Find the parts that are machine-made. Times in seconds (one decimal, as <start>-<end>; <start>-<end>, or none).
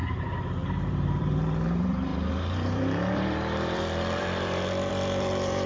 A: 0.0-5.7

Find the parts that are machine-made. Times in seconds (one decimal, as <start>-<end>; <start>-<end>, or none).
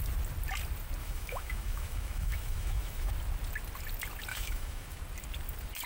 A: 1.0-3.1; 4.3-5.0